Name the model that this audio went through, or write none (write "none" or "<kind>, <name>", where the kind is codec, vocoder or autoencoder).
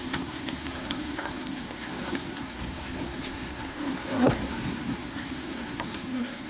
codec, SNAC